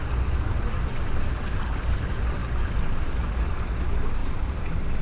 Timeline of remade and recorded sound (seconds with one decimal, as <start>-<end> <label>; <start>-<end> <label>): 0.0-5.0 recorded